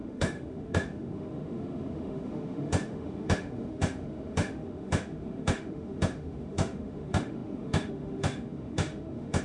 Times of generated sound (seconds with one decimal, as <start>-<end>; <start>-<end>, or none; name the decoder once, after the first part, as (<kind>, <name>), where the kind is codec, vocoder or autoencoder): 0.0-9.4 (autoencoder, DAC-VAE)